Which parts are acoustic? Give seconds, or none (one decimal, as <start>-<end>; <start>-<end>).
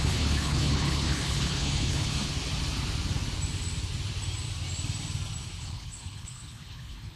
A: 2.3-5.6